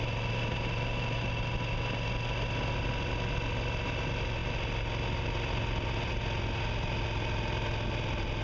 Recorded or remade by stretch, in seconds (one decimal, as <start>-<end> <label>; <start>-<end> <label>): 0.0-8.4 recorded